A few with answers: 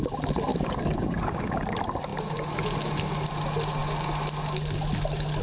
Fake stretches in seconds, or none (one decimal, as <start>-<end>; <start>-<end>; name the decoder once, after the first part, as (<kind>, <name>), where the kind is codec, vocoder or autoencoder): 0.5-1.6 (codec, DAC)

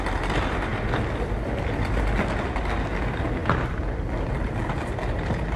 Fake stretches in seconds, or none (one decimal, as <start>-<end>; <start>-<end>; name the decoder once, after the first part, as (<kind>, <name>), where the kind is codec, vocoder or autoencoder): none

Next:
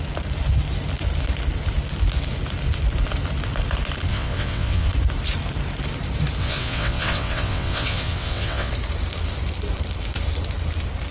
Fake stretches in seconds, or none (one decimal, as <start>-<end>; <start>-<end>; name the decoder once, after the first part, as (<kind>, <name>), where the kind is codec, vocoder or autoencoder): 4.1-4.9 (vocoder, WaveNeXt); 6.4-8.7

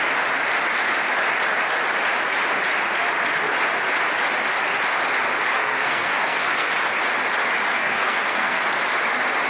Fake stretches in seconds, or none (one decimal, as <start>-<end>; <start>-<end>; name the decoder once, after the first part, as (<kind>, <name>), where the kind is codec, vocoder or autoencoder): 5.5-6.7 (codec, SNAC); 7.7-8.6

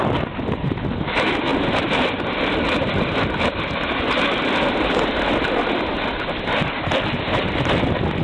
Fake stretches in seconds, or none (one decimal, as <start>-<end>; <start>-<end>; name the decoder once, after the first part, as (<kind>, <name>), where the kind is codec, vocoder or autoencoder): none

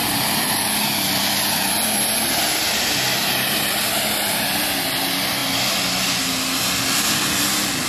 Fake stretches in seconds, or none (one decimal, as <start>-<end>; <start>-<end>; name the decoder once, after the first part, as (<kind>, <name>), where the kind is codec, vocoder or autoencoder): none

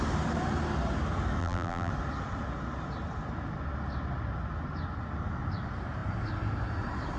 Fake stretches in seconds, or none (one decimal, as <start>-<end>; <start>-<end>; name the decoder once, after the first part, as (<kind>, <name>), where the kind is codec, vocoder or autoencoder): 1.4-1.9 (vocoder, BigVGAN v2)

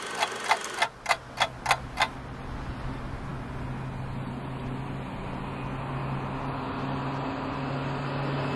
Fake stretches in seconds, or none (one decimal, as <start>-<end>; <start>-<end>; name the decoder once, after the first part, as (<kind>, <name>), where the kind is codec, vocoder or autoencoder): none